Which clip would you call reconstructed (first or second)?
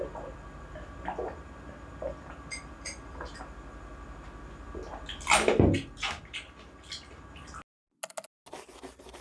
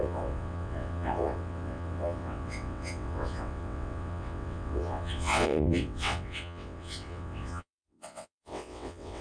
second